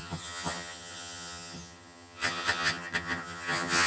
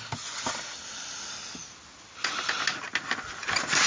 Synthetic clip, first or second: first